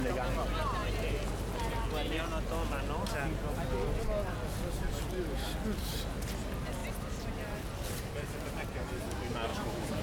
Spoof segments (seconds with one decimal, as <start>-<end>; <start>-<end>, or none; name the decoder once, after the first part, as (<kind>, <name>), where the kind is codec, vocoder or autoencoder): 9.5-10.0 (autoencoder, DAC-VAE)